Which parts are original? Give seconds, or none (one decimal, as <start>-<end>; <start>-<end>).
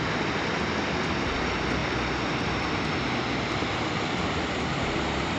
0.0-5.4